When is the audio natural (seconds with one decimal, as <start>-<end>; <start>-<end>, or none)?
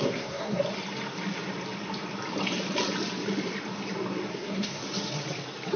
0.6-4.3; 4.8-5.8